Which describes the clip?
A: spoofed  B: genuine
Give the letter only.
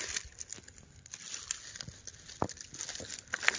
B